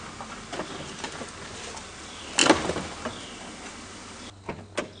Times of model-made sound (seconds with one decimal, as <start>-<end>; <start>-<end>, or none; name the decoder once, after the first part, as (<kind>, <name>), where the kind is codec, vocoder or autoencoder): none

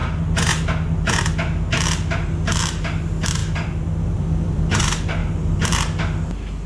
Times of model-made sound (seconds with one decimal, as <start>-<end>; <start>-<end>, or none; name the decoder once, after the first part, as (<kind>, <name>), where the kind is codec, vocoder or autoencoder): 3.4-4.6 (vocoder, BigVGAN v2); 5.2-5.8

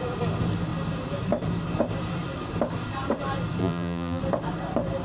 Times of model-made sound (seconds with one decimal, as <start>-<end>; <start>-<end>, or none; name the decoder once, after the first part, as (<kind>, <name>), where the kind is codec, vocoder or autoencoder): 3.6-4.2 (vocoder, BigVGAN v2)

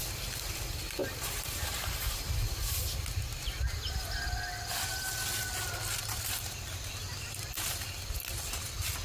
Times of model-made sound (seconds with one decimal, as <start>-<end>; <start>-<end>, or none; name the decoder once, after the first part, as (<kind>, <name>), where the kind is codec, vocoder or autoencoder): 1.0-2.5 (vocoder, BigVGAN v2)

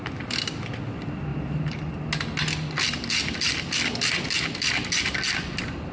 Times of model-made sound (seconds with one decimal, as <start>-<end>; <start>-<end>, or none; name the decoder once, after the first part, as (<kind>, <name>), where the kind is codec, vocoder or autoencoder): 1.3-1.9 (vocoder, BigVGAN v2)

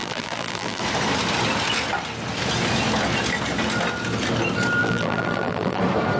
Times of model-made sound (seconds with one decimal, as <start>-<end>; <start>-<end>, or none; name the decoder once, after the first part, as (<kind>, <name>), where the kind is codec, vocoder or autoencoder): 0.0-0.8 (vocoder, BigVGAN v2); 4.8-5.8